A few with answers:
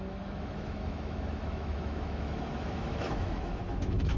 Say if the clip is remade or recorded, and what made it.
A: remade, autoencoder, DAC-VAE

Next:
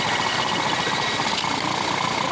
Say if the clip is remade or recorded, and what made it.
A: recorded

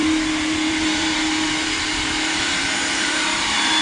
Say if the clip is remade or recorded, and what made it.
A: remade, vocoder, BigVGAN v2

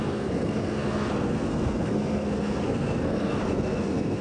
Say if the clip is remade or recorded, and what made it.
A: remade, codec, SNAC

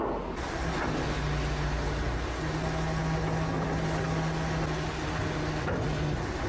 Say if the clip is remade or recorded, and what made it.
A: recorded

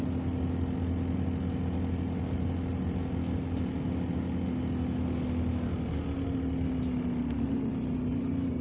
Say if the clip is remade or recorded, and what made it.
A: recorded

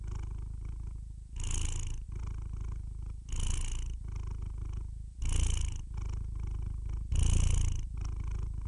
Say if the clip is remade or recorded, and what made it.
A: recorded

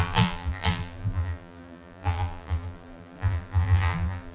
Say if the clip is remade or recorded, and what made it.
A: remade, vocoder, BigVGAN v2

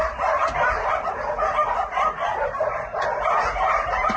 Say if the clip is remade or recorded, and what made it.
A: remade, vocoder, BigVGAN v2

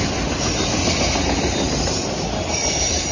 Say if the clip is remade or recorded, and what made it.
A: recorded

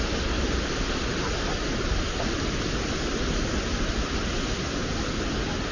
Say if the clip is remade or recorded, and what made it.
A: recorded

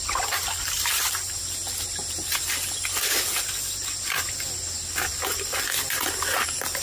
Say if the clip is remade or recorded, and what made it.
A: recorded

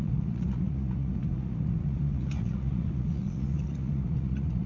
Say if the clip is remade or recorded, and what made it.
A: remade, vocoder, Vocos